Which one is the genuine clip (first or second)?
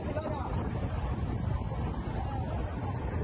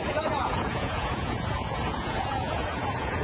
first